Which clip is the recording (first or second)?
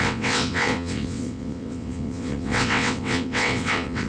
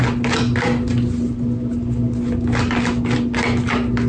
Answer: second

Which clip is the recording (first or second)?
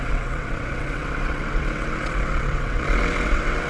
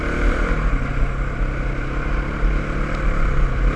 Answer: second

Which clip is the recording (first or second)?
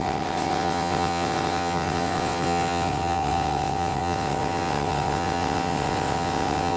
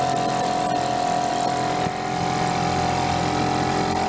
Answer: second